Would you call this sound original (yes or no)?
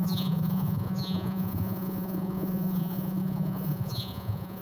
no